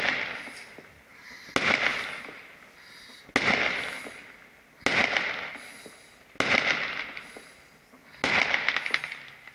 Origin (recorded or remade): recorded